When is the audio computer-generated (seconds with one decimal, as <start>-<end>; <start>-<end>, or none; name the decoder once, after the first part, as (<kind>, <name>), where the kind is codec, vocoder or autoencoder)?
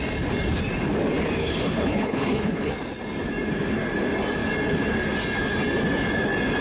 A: 1.4-2.7 (codec, HILCodec)